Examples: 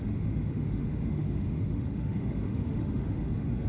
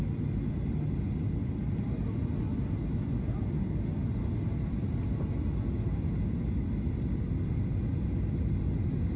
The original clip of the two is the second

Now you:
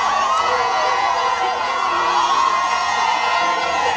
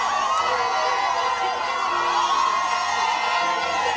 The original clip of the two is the second